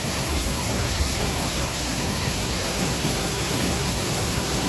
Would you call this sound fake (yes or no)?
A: yes